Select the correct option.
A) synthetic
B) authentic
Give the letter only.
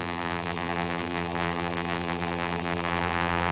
A